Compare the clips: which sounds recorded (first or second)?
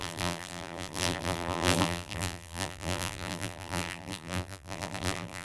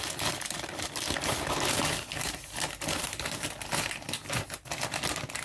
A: second